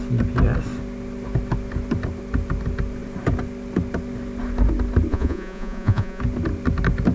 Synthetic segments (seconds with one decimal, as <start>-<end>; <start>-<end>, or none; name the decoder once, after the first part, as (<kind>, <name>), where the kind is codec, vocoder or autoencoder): 5.1-6.2 (vocoder, Vocos)